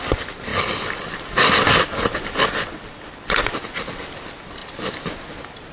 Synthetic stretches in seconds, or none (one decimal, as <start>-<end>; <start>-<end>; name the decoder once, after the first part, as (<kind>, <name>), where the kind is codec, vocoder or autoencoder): none